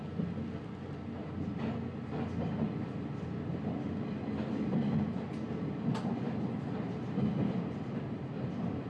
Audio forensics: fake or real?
real